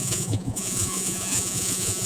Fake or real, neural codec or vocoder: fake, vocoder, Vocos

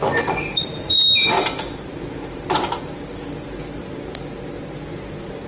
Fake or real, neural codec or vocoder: real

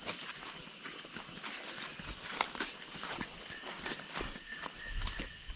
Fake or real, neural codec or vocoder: real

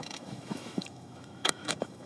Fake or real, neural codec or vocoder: fake, autoencoder, DAC-VAE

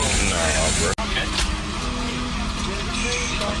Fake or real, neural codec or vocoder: real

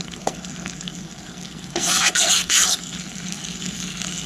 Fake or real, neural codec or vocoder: fake, codec, SNAC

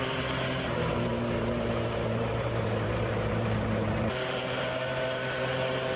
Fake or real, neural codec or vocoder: fake, vocoder, BigVGAN v2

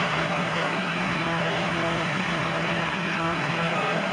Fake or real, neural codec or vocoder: fake, codec, SNAC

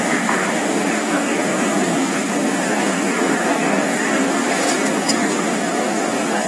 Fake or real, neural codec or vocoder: fake, codec, DAC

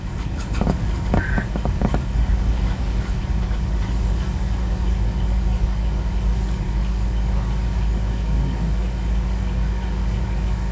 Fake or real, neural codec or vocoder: fake, codec, DAC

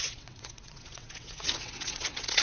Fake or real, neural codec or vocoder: fake, vocoder, WaveNeXt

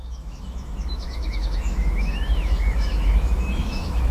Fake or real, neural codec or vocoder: fake, autoencoder, DAC-VAE